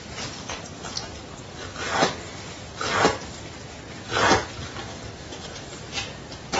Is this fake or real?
real